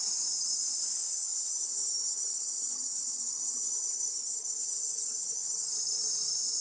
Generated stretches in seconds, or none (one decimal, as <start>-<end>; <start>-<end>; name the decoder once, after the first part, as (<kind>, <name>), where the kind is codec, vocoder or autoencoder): 0.0-6.6 (vocoder, HiFi-GAN)